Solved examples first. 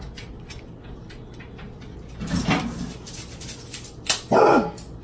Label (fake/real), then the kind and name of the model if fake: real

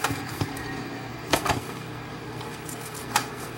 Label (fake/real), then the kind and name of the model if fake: fake, codec, SNAC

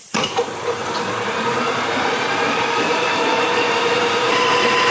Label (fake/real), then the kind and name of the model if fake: fake, vocoder, BigVGAN v2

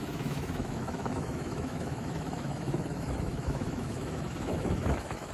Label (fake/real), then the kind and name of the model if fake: fake, autoencoder, DAC-VAE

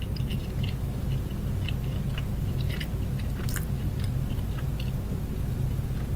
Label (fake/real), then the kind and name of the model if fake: real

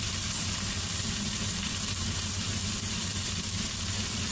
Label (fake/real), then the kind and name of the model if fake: real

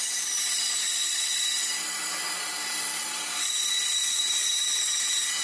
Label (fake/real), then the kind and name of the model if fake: real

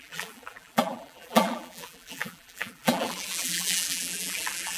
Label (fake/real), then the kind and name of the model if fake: fake, vocoder, BigVGAN v2